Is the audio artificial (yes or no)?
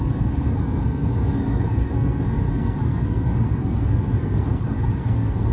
yes